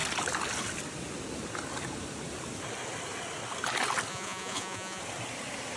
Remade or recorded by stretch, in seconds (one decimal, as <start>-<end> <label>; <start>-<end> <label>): 0.0-4.1 recorded; 4.1-5.0 remade; 5.0-5.8 recorded